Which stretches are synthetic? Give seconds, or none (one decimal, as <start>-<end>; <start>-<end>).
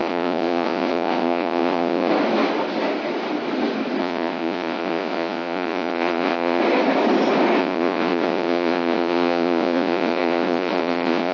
0.0-2.1; 4.0-6.6; 7.6-11.3